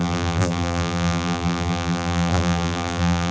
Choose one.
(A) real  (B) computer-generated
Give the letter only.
B